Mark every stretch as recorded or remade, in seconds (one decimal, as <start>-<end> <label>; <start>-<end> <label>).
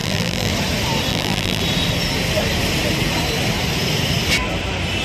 0.0-0.5 remade; 0.5-1.1 recorded; 1.1-1.6 remade; 1.6-5.0 recorded